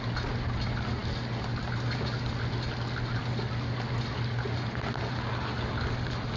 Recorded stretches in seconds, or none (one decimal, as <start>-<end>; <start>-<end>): 0.0-6.4